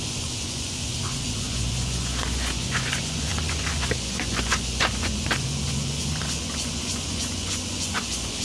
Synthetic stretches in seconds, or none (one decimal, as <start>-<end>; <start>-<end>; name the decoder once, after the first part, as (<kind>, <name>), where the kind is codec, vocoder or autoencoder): 0.0-8.4 (vocoder, Vocos)